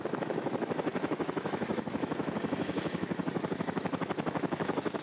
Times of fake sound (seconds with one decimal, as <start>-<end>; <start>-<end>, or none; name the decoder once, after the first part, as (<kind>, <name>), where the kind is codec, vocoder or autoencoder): 0.0-5.0 (autoencoder, DAC-VAE)